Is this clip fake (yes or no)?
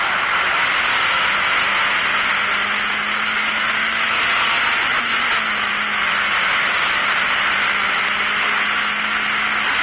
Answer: no